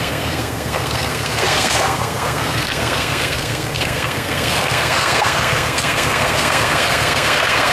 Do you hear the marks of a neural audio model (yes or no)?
yes